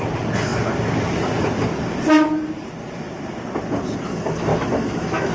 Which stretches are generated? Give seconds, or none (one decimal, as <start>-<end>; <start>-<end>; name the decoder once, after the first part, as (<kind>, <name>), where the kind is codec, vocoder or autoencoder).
4.5-5.3 (autoencoder, DAC-VAE)